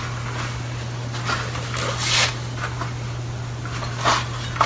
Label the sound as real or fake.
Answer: real